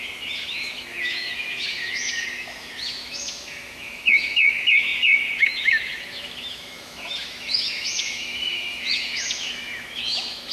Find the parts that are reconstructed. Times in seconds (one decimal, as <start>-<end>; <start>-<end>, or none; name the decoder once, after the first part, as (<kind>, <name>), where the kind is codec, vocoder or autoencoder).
0.0-10.5 (autoencoder, DAC-VAE)